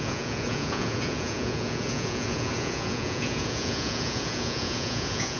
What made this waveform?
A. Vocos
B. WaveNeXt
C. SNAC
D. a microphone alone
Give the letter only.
A